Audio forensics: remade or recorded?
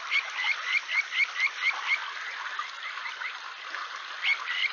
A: recorded